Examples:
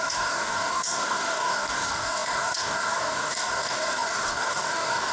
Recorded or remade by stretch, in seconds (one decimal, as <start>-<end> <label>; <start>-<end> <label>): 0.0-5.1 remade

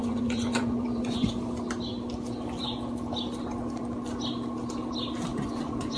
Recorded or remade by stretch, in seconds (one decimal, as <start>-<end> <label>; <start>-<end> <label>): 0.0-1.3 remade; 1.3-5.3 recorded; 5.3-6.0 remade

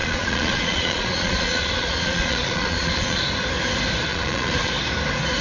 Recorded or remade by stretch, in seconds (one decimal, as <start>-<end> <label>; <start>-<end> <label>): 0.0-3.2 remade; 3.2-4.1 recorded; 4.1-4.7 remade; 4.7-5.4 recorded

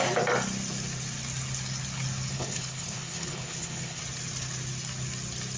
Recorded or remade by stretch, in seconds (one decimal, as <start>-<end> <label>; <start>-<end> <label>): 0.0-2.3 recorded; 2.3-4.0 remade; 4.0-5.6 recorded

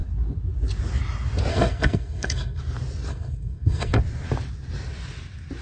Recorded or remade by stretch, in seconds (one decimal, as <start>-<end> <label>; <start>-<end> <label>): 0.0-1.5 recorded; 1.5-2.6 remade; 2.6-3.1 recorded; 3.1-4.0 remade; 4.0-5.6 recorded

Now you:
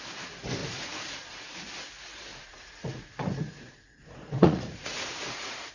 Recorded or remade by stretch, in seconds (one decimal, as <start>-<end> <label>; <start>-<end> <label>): 0.0-0.6 recorded; 0.6-1.6 remade; 1.6-2.3 recorded; 2.3-5.7 remade